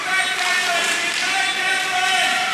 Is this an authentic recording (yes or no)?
yes